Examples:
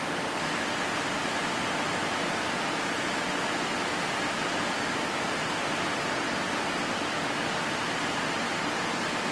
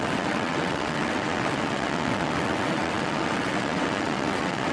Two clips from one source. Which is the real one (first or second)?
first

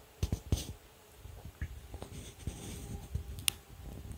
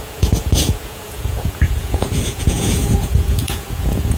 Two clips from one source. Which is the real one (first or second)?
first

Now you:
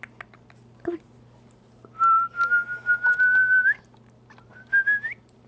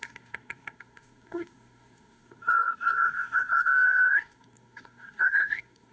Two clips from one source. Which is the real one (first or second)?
first